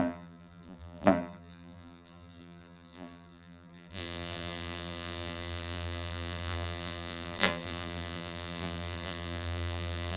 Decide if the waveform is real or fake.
fake